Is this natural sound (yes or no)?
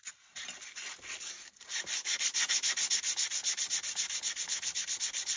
yes